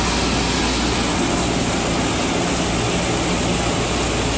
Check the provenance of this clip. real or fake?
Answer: real